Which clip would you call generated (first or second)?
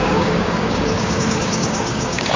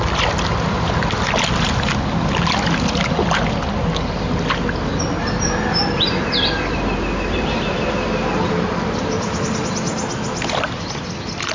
first